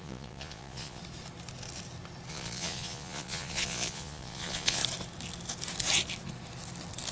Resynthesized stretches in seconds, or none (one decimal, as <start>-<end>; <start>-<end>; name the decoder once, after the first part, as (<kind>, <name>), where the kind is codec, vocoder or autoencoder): 0.0-1.0 (vocoder, Vocos); 2.3-4.8